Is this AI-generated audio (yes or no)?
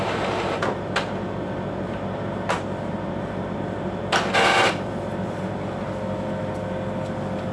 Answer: no